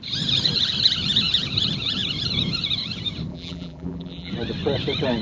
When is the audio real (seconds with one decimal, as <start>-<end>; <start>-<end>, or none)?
0.0-3.3; 4.3-5.2